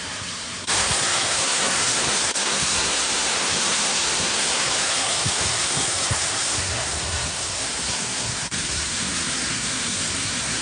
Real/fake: fake